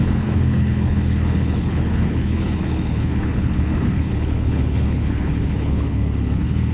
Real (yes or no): no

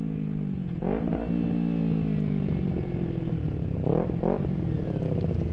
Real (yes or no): yes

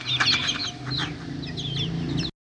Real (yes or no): yes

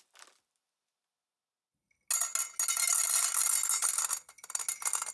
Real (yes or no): yes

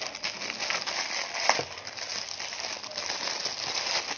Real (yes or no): yes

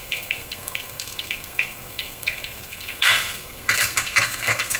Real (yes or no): no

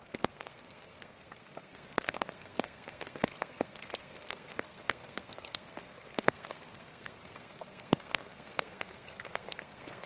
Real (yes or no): no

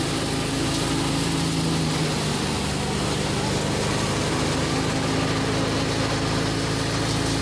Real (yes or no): yes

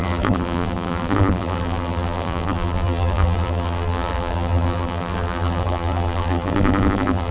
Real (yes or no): no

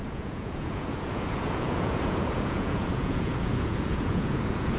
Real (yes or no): no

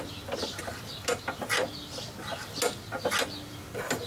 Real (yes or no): yes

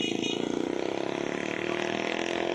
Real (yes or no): yes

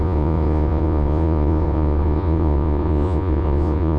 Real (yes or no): no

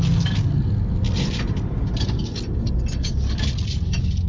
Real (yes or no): yes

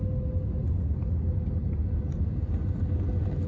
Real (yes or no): yes